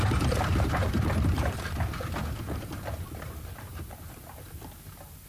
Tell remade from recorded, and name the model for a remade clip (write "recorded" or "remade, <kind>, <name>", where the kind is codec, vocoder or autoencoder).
recorded